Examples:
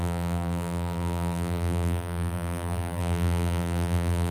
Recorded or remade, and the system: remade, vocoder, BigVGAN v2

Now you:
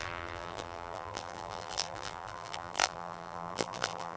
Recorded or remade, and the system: remade, vocoder, BigVGAN v2